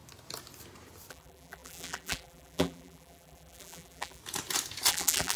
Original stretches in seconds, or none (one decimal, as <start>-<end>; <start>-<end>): 0.0-1.1; 4.2-4.9